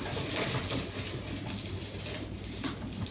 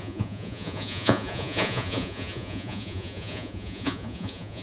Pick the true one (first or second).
first